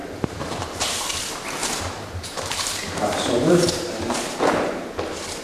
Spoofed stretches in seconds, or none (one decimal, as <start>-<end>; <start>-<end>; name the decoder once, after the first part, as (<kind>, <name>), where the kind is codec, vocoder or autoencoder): 0.0-1.2 (vocoder, BigVGAN v2); 1.6-4.8